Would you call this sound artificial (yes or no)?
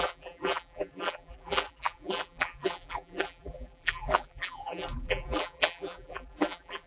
yes